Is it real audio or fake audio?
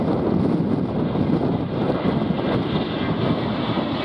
real